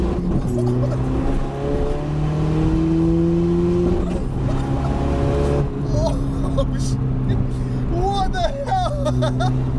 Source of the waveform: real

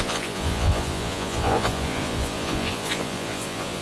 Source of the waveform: fake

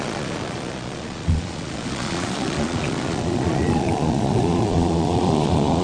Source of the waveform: fake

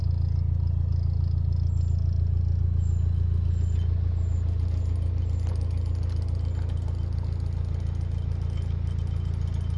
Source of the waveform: real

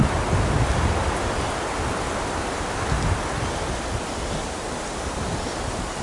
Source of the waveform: real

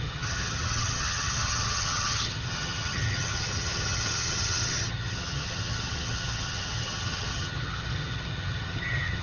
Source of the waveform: fake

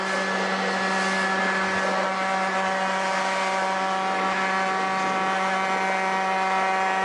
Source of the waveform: real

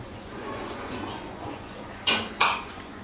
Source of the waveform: fake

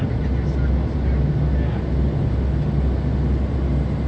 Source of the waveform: real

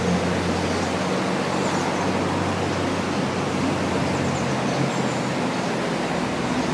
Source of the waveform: real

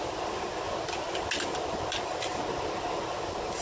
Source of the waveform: real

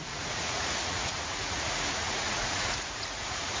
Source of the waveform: fake